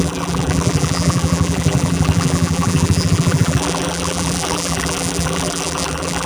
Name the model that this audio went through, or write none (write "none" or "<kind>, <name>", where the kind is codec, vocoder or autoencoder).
vocoder, BigVGAN v2